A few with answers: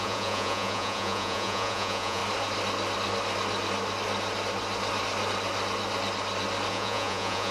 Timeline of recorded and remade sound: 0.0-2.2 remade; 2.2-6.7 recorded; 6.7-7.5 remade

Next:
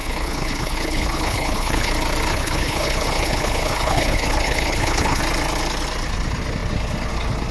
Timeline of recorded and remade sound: 0.0-1.9 remade; 1.9-2.3 recorded; 2.3-5.2 remade; 5.2-7.5 recorded